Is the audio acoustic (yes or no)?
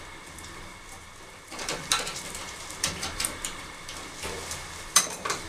no